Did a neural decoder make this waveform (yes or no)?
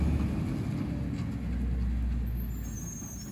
no